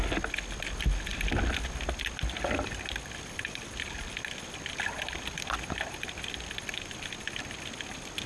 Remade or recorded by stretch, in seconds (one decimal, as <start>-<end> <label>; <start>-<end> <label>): 0.0-8.3 recorded